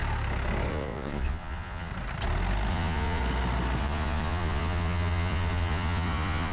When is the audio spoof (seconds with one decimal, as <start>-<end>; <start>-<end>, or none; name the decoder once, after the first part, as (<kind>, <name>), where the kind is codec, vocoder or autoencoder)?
0.7-1.9 (vocoder, Vocos); 2.7-3.2; 3.8-6.5